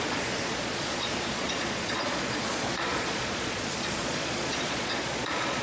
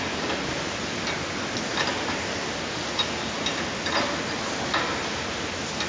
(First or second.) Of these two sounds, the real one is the second